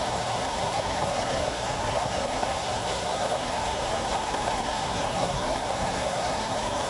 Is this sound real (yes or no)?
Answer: no